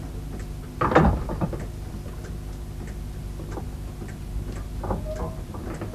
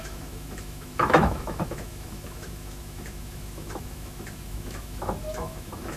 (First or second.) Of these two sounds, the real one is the first